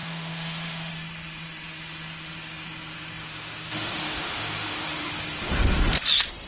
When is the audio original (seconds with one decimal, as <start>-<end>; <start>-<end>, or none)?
0.9-3.2; 5.1-6.5